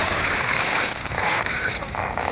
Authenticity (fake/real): fake